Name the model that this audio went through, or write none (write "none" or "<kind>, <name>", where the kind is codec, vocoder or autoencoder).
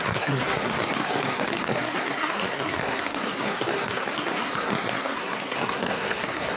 codec, SNAC